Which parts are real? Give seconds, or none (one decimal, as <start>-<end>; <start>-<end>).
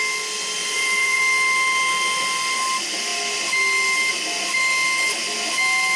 0.0-0.6; 1.2-6.0